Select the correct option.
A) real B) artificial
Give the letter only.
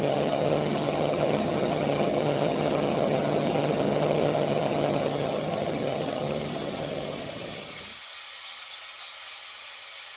B